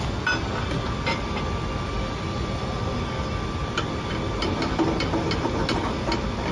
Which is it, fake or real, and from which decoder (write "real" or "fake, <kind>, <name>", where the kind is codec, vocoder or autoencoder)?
real